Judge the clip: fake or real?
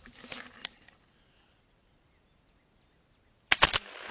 real